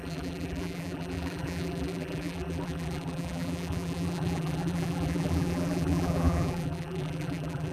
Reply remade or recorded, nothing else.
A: remade